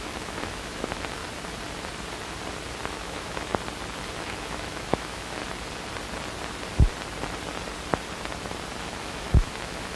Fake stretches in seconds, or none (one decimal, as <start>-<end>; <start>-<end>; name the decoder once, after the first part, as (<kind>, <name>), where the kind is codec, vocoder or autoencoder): 0.0-1.2 (autoencoder, DAC-VAE); 2.9-3.5; 4.2-5.4; 9.0-10.0